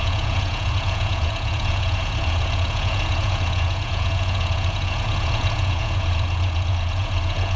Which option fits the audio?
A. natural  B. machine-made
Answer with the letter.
B